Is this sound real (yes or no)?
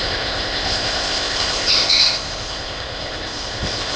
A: no